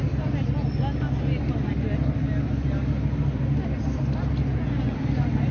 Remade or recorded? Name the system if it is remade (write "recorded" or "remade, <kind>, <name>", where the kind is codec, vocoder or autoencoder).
recorded